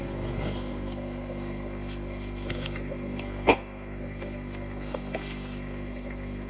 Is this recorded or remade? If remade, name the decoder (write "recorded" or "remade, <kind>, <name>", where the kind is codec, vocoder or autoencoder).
remade, codec, SNAC